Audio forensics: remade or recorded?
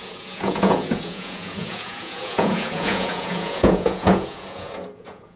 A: remade